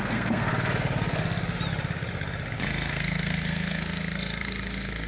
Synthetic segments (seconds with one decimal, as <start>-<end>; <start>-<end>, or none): 0.0-0.5; 2.9-5.1